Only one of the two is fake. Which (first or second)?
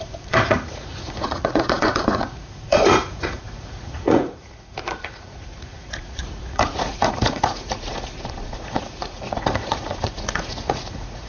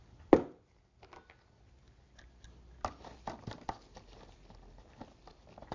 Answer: first